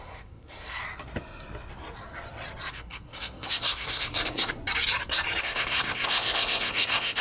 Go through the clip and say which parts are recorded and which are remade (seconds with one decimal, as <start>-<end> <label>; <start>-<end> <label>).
0.0-0.8 remade; 0.8-2.7 recorded; 2.7-4.6 remade; 4.6-5.4 recorded; 5.4-7.2 remade